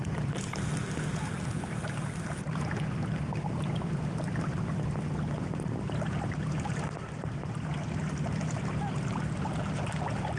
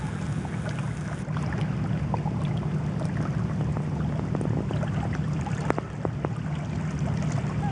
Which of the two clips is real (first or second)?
second